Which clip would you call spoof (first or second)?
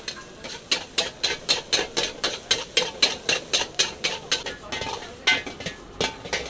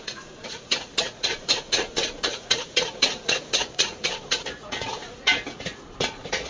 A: second